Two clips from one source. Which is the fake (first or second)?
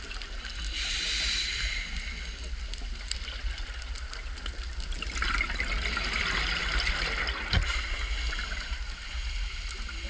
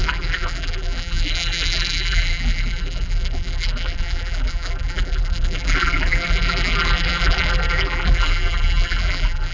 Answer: second